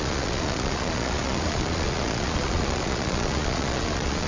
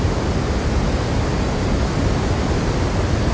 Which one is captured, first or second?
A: second